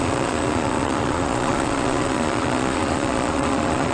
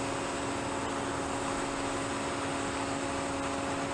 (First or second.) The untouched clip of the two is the second